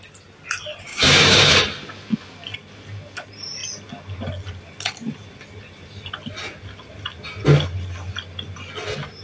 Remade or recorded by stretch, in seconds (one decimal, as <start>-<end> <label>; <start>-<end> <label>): 0.0-0.9 recorded; 0.9-1.5 remade; 1.5-9.2 recorded